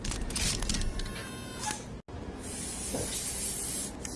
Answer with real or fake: real